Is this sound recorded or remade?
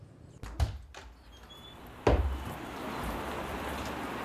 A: recorded